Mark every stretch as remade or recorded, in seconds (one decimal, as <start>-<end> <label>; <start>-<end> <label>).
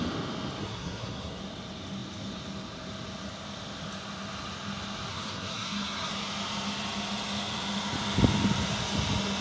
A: 0.0-0.6 recorded; 0.6-1.4 remade; 1.4-5.1 recorded; 5.1-6.1 remade; 6.1-9.4 recorded